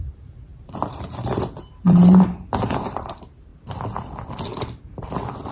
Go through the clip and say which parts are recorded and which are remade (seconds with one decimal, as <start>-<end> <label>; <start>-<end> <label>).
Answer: 0.0-3.5 remade; 3.5-4.7 recorded; 4.7-5.5 remade